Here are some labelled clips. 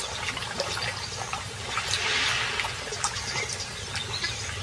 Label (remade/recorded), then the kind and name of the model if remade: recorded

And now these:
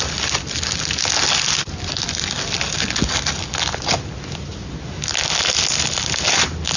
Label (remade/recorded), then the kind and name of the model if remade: recorded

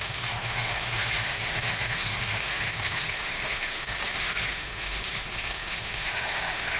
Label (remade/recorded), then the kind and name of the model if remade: remade, autoencoder, DAC-VAE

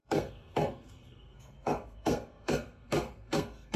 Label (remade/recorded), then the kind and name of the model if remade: remade, codec, SNAC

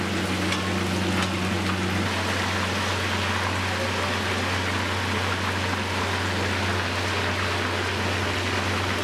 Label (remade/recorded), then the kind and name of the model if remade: recorded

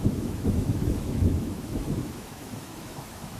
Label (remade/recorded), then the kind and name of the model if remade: remade, autoencoder, DAC-VAE